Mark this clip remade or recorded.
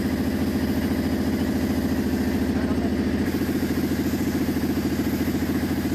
recorded